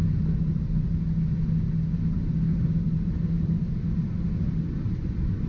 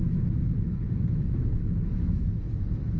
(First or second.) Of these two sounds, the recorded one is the first